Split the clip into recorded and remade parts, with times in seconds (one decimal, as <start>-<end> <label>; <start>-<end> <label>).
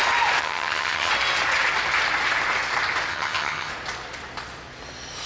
0.0-0.4 recorded; 0.4-1.1 remade; 1.1-3.1 recorded; 3.1-3.7 remade; 3.7-5.3 recorded